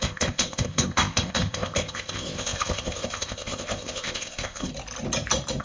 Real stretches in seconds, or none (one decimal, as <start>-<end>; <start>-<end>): 4.7-5.6